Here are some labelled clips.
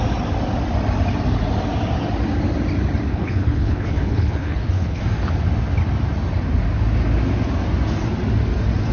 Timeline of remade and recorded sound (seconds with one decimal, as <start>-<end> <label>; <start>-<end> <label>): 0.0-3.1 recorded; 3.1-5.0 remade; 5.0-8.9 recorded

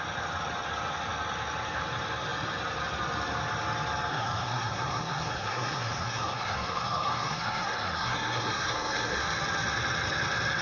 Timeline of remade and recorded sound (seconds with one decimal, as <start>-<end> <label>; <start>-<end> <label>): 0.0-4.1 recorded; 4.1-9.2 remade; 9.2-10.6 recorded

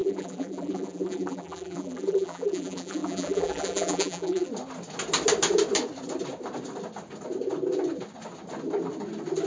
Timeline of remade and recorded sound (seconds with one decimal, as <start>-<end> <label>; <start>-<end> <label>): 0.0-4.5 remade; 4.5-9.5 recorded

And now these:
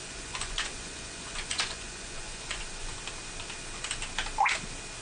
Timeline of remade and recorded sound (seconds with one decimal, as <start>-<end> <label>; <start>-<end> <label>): 0.0-3.0 remade; 3.0-5.0 recorded